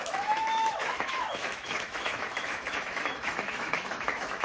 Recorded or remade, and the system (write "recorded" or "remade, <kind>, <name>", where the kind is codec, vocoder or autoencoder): remade, autoencoder, DAC-VAE